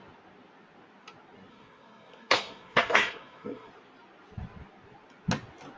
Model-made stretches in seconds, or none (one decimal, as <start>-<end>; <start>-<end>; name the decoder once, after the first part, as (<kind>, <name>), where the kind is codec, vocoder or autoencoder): 1.5-3.7 (codec, SNAC)